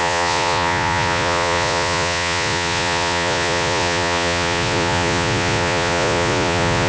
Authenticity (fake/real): fake